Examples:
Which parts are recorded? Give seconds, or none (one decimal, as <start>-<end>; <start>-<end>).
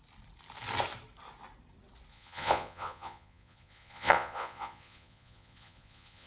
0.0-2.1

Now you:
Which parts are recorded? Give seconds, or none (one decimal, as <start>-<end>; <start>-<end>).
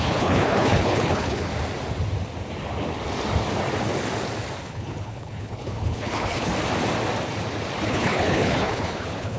1.5-4.6; 6.5-7.8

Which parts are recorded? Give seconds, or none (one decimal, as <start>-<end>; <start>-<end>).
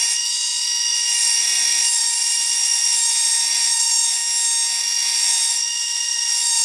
4.2-4.8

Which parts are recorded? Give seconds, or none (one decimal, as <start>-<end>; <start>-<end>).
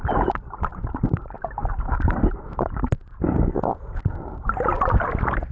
0.0-5.5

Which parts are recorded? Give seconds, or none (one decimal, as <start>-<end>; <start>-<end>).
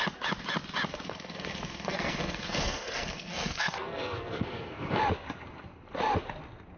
0.0-0.9; 5.0-6.8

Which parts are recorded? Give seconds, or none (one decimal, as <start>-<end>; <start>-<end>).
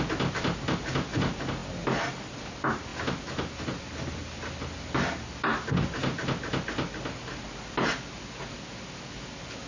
0.0-9.7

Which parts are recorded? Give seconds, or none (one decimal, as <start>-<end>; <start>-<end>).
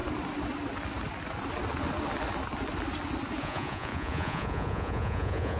0.0-3.4